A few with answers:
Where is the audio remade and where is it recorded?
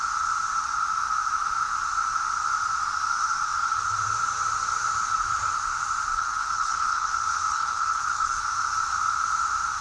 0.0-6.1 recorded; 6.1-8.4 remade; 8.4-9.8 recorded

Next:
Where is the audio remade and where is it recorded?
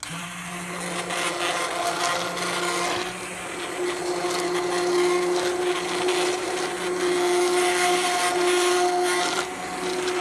0.0-10.2 recorded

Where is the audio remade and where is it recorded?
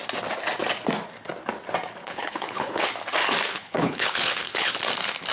0.0-2.0 recorded; 2.0-2.9 remade; 2.9-3.5 recorded; 3.5-4.7 remade; 4.7-5.3 recorded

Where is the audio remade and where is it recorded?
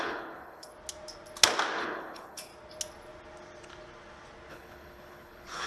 0.0-0.7 remade; 0.7-1.8 recorded; 1.8-2.5 remade; 2.5-4.5 recorded; 4.5-5.7 remade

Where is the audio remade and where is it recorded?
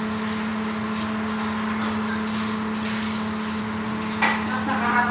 0.0-5.1 recorded